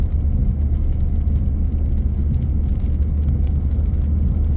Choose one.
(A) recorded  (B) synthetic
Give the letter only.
A